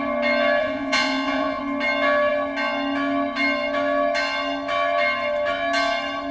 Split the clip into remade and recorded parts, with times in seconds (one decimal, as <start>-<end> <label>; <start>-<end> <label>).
0.0-0.6 recorded; 0.6-1.6 remade; 1.6-6.3 recorded